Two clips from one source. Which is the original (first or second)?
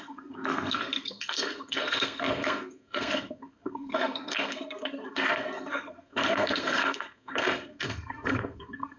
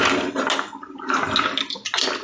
second